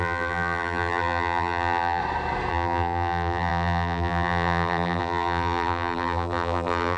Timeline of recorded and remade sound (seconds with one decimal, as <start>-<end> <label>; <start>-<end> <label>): 0.0-2.0 remade; 2.0-2.5 recorded; 2.5-7.0 remade